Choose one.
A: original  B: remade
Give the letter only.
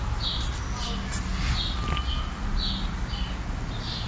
A